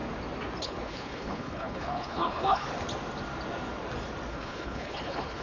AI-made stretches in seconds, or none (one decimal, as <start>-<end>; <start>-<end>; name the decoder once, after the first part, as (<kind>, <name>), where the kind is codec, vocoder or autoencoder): 0.6-2.7 (codec, HILCodec); 4.3-5.4